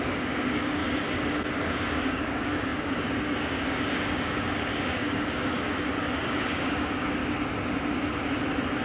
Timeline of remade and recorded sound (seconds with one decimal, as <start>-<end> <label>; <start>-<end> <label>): 0.0-0.8 remade; 0.8-1.7 recorded; 1.7-7.2 remade; 7.2-8.8 recorded